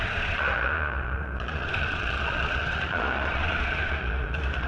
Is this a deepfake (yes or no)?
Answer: yes